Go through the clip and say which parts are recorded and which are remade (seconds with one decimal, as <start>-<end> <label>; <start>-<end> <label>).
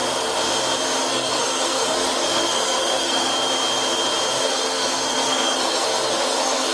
0.0-1.0 recorded; 1.0-3.3 remade; 3.3-4.3 recorded; 4.3-6.7 remade